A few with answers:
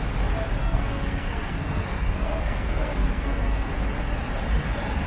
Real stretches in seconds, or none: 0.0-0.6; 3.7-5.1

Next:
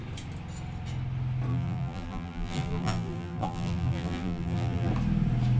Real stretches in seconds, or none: 0.0-1.5; 4.9-5.6

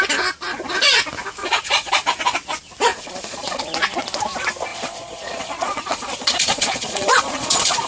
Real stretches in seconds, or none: 0.0-1.4; 1.9-2.9; 3.6-4.7

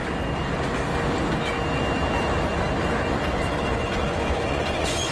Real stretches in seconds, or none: 0.0-3.1

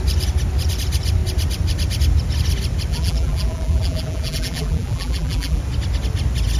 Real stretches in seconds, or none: 0.0-2.9; 5.6-6.6

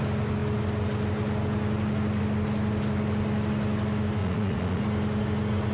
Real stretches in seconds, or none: 0.0-4.2; 4.8-5.7

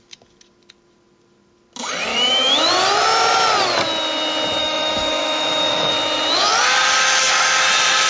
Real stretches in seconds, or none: 0.0-2.1; 2.7-4.6; 5.9-8.1

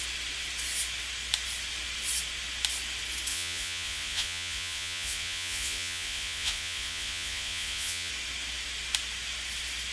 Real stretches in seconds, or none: 0.0-3.3; 8.1-9.9